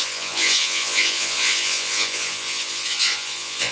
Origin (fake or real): fake